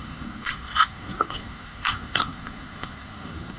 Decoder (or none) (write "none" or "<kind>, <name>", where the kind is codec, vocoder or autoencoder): codec, SNAC